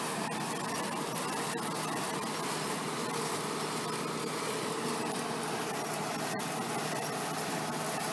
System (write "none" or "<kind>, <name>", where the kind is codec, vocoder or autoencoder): none